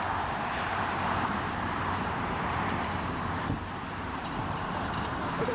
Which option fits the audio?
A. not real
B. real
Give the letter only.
A